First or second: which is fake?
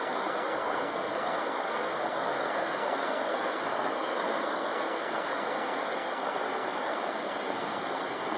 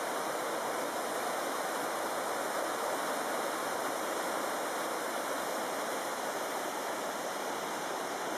first